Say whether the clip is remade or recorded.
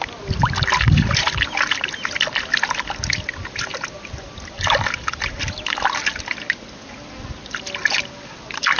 recorded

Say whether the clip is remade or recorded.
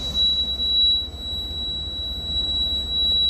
recorded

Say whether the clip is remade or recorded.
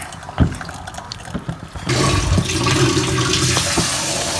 recorded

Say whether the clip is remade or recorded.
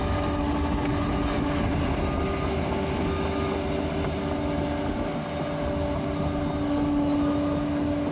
recorded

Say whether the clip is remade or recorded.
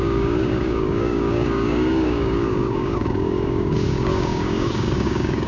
remade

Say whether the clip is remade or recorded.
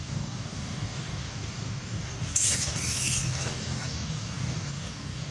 remade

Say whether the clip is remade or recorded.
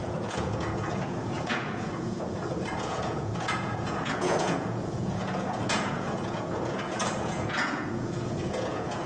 remade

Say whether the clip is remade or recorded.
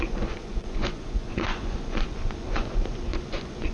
remade